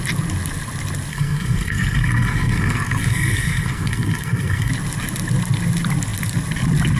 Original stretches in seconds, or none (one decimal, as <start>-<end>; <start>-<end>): 0.0-1.1; 4.7-7.0